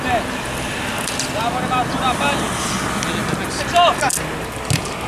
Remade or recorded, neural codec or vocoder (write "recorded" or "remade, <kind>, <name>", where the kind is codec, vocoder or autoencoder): recorded